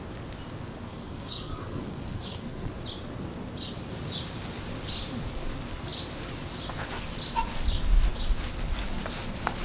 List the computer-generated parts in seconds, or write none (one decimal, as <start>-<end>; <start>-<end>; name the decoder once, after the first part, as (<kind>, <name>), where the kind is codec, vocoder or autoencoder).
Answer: 0.9-2.7 (codec, SNAC)